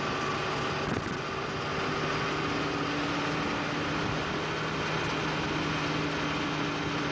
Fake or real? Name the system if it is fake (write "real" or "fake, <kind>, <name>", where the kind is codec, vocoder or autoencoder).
real